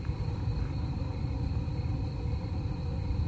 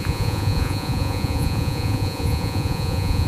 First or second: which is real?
first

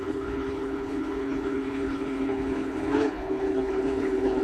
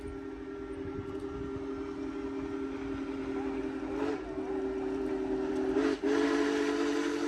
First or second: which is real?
second